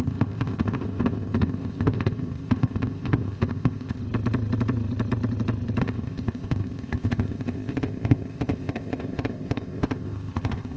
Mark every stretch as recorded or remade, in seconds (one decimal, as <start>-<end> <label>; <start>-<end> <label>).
0.0-4.0 remade; 4.0-5.8 recorded; 5.8-10.8 remade